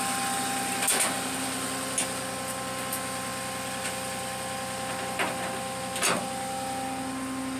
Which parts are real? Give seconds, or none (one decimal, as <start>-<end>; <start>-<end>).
0.0-7.6

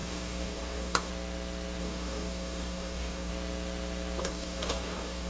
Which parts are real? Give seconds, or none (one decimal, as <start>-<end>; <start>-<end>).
1.1-1.8; 3.3-4.2